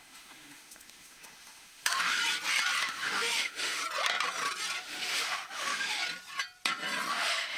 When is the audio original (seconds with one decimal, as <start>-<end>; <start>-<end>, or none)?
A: 2.2-2.8; 3.8-4.8; 6.0-7.1